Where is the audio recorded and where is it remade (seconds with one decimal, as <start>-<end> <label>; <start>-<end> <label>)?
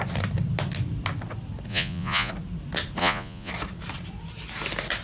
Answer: 0.0-1.7 recorded; 1.7-2.3 remade; 2.3-3.0 recorded; 3.0-3.5 remade; 3.5-5.0 recorded